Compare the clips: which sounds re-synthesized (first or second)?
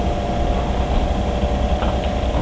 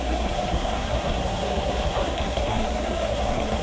second